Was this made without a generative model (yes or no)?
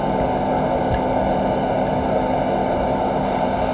yes